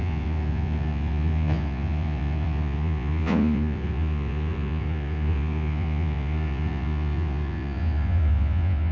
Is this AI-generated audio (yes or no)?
yes